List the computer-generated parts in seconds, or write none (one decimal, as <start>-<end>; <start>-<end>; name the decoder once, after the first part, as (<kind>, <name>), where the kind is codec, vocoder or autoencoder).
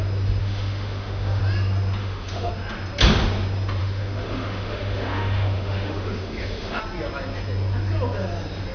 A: 0.4-1.4 (autoencoder, DAC-VAE); 2.0-2.5; 3.8-6.8